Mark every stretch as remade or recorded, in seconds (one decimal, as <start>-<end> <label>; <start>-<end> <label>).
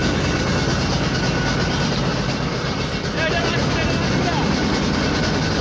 0.0-5.6 recorded